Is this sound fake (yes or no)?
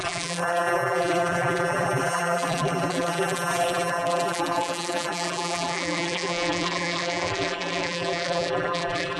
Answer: yes